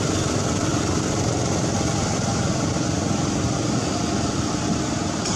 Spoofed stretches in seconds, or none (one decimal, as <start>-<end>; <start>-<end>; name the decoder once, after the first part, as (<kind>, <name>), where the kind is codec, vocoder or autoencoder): 0.7-2.1 (vocoder, BigVGAN v2)